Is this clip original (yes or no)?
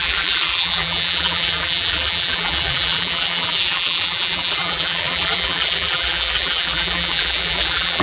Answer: no